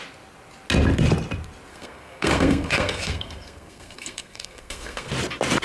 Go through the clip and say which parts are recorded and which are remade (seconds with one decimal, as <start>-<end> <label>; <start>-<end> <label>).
0.0-1.7 recorded; 1.7-5.1 remade; 5.1-5.6 recorded